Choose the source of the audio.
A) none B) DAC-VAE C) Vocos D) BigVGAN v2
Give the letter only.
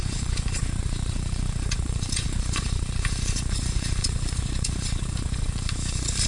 C